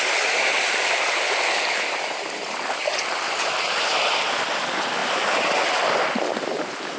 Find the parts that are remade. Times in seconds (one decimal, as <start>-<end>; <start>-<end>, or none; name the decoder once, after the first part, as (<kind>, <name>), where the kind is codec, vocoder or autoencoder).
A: none